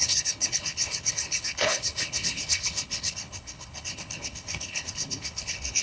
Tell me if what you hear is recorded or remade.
remade